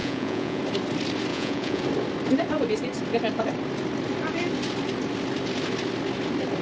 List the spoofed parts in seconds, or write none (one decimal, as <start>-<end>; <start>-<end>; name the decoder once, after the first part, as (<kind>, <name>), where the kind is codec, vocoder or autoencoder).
0.0-0.6 (vocoder, Vocos); 1.3-1.8